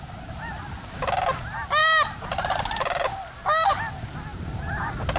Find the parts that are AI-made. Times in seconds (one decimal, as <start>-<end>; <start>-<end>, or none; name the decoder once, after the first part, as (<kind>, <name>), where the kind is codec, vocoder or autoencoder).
none